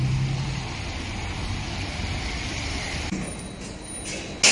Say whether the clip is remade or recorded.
recorded